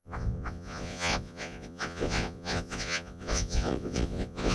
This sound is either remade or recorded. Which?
remade